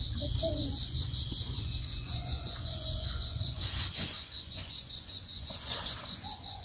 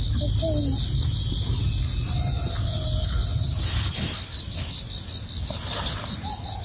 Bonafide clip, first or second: second